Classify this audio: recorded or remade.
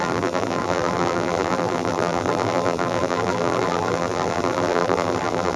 remade